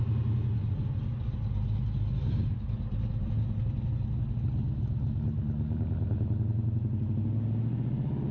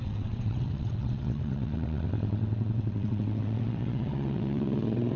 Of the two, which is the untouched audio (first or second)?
first